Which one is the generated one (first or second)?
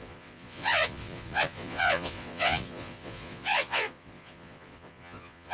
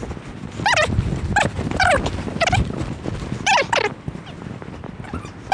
first